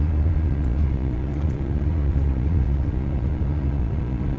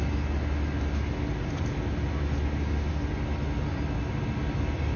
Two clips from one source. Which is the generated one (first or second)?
first